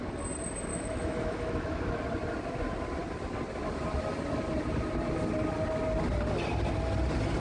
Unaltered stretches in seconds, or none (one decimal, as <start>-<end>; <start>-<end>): 0.0-0.7; 2.0-7.4